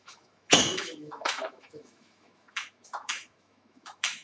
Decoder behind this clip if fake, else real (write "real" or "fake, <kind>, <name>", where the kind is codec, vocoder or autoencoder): fake, autoencoder, DAC-VAE